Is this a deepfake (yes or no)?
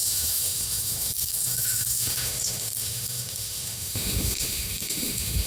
yes